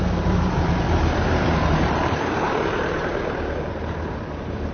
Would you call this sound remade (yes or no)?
yes